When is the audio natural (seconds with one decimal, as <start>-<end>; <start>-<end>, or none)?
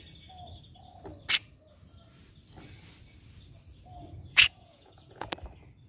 0.0-4.3; 5.3-5.9